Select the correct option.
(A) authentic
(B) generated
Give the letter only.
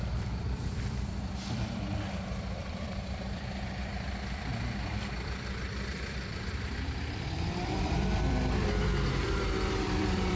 B